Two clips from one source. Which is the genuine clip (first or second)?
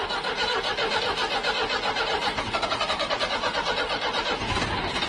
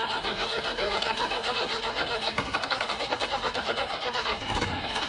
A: first